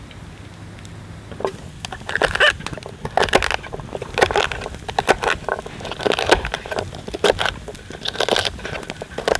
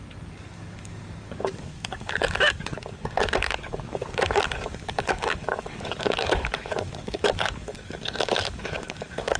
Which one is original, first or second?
first